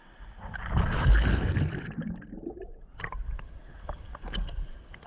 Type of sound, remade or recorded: recorded